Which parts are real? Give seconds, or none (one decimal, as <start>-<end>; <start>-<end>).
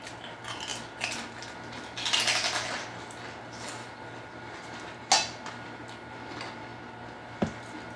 0.0-8.0